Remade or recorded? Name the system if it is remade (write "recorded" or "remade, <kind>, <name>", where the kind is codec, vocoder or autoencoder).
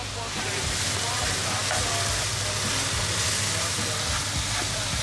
recorded